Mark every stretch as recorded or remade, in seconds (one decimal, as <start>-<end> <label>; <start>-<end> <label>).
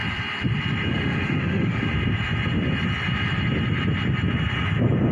0.0-0.9 recorded; 0.9-1.9 remade; 1.9-5.1 recorded